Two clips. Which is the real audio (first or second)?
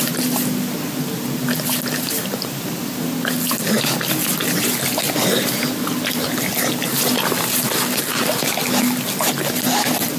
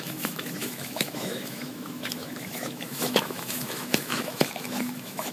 first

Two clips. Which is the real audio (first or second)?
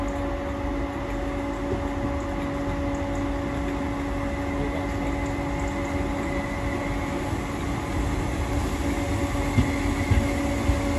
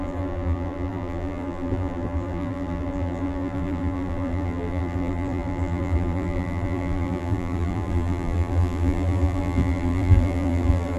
first